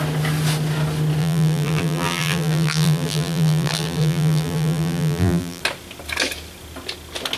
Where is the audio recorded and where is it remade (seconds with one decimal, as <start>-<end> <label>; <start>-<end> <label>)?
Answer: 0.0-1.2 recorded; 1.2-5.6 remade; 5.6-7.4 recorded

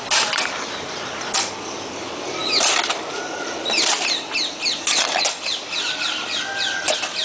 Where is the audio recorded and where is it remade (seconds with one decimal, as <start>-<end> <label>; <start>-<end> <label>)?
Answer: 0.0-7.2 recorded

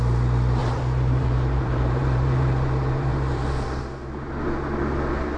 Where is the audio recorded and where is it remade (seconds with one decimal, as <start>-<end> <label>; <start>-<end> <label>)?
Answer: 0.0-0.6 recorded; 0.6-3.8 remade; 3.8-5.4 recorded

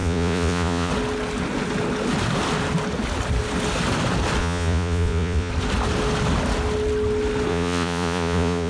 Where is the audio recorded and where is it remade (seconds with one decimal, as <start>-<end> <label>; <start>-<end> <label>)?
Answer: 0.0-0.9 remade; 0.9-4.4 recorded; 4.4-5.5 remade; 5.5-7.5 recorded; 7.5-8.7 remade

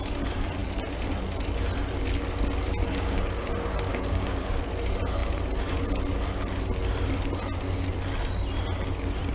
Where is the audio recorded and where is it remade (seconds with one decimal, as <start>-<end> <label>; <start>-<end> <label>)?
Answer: 0.0-2.8 recorded; 2.8-3.5 remade; 3.5-3.9 recorded; 3.9-4.6 remade; 4.6-9.3 recorded

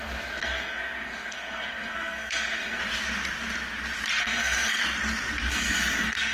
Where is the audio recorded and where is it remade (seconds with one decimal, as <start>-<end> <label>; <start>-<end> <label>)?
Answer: 0.0-2.8 remade; 2.8-4.2 recorded; 4.2-4.8 remade; 4.8-5.5 recorded; 5.5-6.3 remade

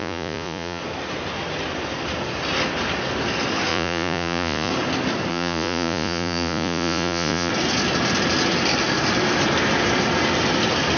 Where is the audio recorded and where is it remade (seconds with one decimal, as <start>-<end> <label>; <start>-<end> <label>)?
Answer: 0.0-0.8 remade; 0.8-3.7 recorded; 3.7-4.7 remade; 4.7-5.3 recorded; 5.3-7.5 remade; 7.5-11.0 recorded

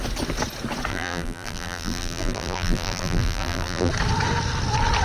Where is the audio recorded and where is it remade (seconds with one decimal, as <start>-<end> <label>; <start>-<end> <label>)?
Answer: 0.0-0.9 recorded; 0.9-3.9 remade; 3.9-5.0 recorded